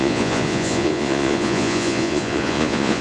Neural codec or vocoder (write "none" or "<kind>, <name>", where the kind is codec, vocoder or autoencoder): vocoder, Vocos